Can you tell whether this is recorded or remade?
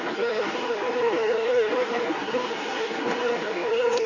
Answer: remade